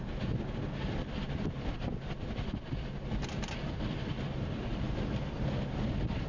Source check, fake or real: real